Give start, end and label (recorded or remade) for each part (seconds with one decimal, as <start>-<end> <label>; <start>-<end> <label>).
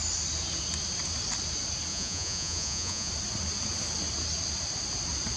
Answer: 0.0-1.9 recorded; 1.9-3.1 remade; 3.1-5.4 recorded